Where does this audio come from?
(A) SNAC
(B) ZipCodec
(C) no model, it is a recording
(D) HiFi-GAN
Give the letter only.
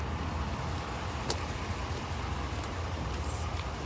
C